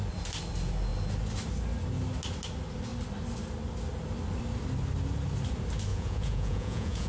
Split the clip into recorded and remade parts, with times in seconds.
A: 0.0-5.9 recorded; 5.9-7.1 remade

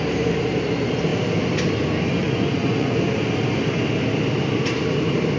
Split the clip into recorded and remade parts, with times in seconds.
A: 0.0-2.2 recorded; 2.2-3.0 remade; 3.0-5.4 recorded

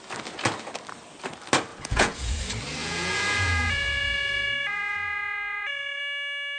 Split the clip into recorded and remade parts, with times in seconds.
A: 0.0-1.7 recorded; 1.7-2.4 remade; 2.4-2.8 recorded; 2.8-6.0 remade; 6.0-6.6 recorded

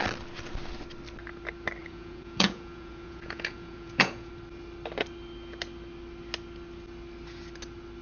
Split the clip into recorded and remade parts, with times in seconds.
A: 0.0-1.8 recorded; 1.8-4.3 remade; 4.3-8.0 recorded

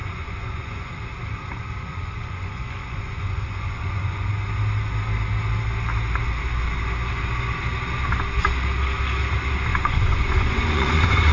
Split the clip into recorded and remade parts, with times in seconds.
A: 0.0-0.9 remade; 0.9-1.9 recorded; 1.9-4.3 remade; 4.3-9.7 recorded; 9.7-11.3 remade